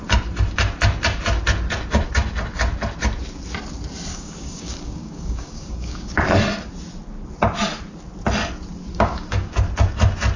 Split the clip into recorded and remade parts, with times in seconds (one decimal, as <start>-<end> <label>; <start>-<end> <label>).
0.0-4.1 recorded; 4.1-6.2 remade; 6.2-8.9 recorded; 8.9-9.5 remade; 9.5-10.4 recorded